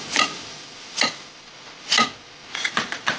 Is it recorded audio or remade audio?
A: remade